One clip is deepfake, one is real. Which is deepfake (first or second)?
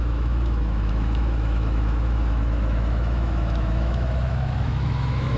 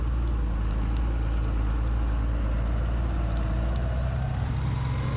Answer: first